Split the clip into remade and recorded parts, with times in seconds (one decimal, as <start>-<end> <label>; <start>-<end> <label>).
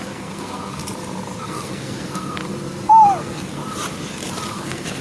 0.0-0.8 remade; 0.8-1.4 recorded; 1.4-2.4 remade; 2.4-3.2 recorded; 3.2-3.6 remade; 3.6-4.5 recorded; 4.5-5.0 remade